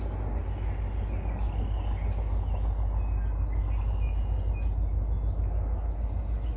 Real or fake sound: real